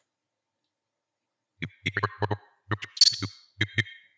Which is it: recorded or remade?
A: recorded